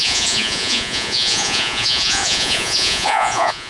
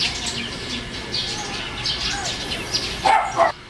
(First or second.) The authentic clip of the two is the second